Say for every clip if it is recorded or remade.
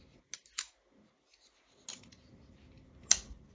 recorded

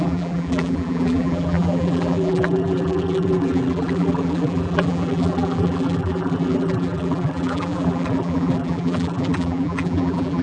remade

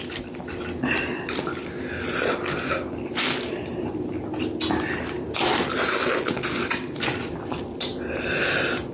recorded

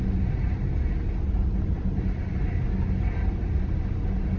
recorded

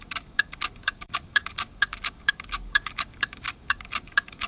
remade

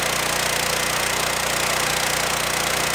recorded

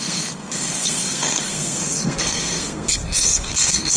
remade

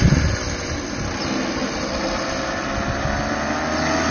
recorded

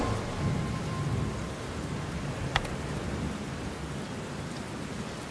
recorded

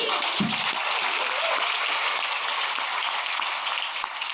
recorded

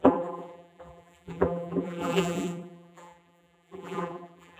remade